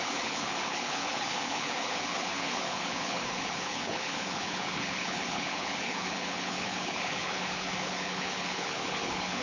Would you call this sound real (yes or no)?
no